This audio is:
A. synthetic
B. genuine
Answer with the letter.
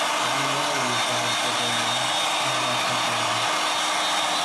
B